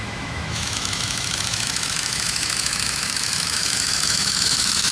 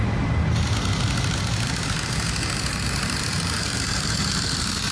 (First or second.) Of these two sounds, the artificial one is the first